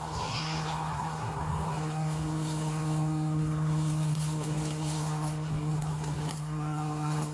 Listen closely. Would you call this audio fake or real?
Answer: fake